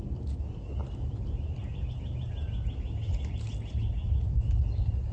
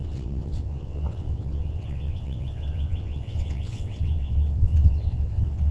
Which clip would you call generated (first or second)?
second